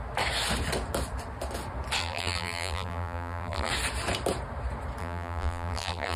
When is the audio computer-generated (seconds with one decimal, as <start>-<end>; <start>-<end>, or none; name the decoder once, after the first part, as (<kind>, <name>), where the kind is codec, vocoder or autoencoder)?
2.0-3.7 (vocoder, BigVGAN v2); 5.0-6.2